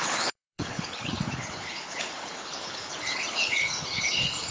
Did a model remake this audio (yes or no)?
yes